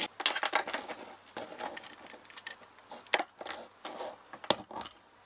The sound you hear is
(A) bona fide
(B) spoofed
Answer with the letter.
A